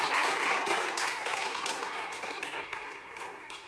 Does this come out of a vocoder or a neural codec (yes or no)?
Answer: yes